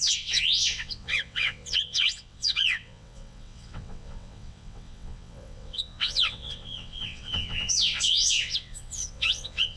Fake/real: fake